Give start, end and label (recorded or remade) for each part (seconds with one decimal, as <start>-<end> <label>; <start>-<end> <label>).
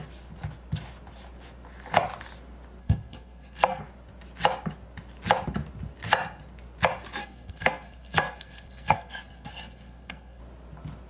0.0-2.8 recorded; 2.8-3.8 remade; 3.8-7.2 recorded; 7.2-10.4 remade; 10.4-11.1 recorded